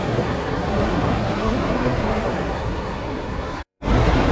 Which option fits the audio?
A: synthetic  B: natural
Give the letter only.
A